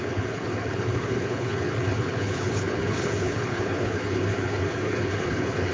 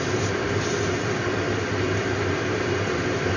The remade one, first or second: first